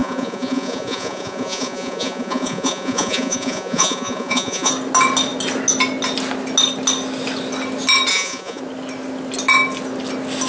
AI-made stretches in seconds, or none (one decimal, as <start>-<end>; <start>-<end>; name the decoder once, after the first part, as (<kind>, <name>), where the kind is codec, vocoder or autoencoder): 0.0-4.7 (vocoder, Vocos); 8.1-8.6